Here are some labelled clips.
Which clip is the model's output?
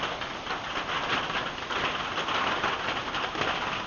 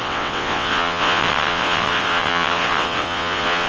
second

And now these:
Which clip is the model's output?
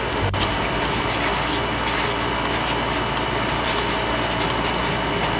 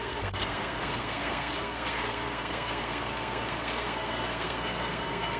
second